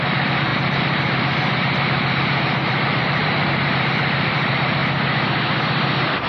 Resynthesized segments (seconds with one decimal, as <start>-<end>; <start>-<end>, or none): 0.0-4.8